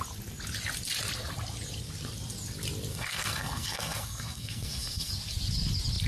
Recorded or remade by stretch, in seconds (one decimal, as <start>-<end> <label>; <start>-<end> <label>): 0.0-2.9 recorded; 2.9-5.1 remade; 5.1-6.1 recorded